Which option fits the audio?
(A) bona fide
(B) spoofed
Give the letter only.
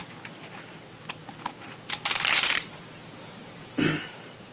A